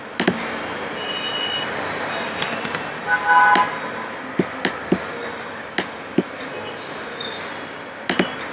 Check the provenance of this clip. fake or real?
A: real